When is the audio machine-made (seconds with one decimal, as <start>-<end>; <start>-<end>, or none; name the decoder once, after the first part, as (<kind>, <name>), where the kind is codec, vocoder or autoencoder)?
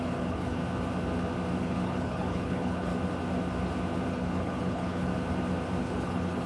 0.0-0.6 (codec, HILCodec); 1.6-2.9; 4.1-5.1; 5.8-6.5